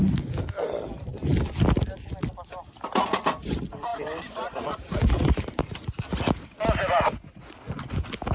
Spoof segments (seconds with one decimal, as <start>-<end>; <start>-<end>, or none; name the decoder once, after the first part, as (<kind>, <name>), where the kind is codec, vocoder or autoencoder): 3.9-5.6 (vocoder, BigVGAN v2)